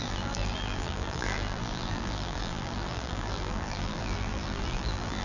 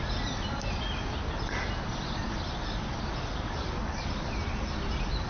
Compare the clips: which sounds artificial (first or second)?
first